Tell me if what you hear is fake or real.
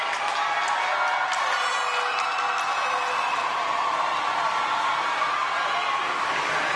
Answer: real